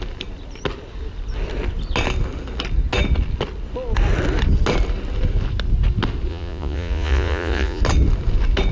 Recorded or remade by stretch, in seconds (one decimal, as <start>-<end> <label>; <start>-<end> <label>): 0.0-6.3 recorded; 6.3-7.8 remade; 7.8-8.7 recorded